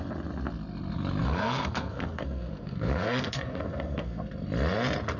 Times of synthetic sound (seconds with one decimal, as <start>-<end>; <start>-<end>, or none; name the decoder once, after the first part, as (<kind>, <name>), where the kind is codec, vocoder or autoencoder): 1.2-4.3 (codec, SNAC)